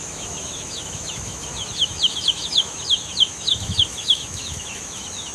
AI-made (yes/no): yes